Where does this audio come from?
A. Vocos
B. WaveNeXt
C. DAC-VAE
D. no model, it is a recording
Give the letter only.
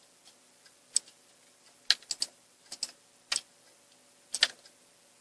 D